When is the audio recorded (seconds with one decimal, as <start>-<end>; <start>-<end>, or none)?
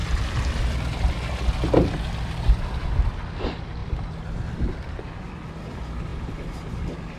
3.2-7.2